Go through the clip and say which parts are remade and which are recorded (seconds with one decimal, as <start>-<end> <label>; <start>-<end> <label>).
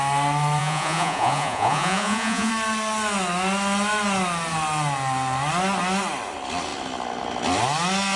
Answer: 0.0-0.6 recorded; 0.6-2.5 remade; 2.5-8.2 recorded